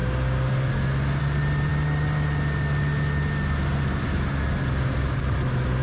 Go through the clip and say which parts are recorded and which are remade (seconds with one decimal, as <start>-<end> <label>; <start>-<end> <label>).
0.0-5.8 recorded